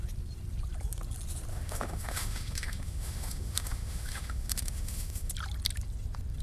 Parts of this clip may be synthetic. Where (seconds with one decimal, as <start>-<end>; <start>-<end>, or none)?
1.5-5.3